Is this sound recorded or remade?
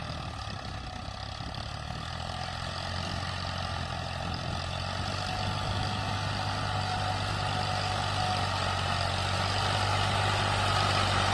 recorded